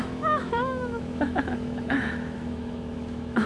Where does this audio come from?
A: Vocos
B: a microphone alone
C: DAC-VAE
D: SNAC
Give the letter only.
C